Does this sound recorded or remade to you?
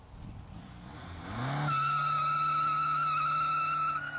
recorded